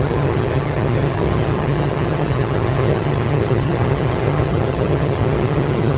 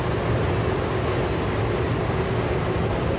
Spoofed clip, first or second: first